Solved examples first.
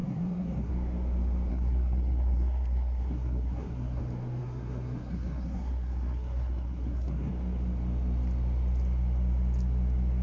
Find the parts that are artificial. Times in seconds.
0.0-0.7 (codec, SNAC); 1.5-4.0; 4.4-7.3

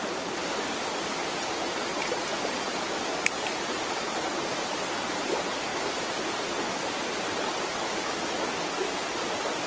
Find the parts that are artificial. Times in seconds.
none

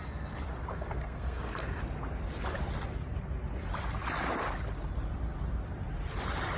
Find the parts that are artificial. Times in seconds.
0.7-1.8 (codec, SNAC)